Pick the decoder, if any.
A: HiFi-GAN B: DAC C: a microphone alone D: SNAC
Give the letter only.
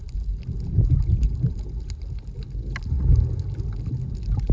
C